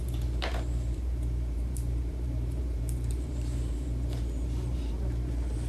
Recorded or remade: remade